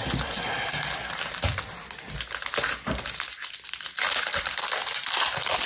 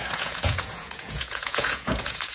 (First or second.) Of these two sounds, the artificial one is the second